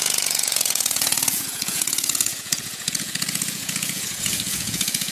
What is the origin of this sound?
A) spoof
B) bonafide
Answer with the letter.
A